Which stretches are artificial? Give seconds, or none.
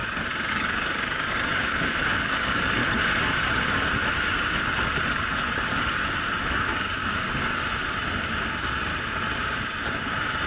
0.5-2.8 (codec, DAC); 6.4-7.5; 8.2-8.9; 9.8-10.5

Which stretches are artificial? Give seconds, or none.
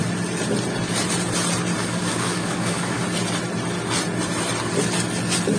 1.8-3.0 (codec, DAC)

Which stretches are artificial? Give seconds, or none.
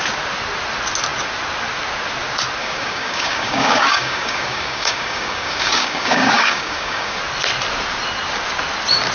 2.6-7.2 (codec, DAC)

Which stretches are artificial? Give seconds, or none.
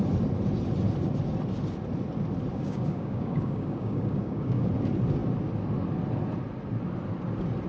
2.5-4.7 (codec, DAC)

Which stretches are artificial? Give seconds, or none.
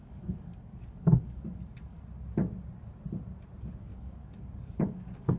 0.0-2.0 (codec, DAC); 3.9-5.4